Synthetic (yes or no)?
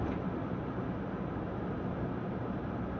no